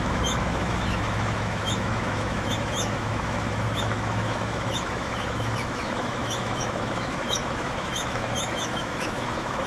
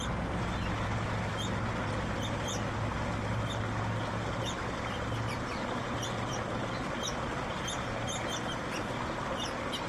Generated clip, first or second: first